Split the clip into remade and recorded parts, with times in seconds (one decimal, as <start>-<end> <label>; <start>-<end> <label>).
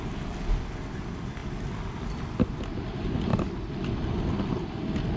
0.0-5.2 recorded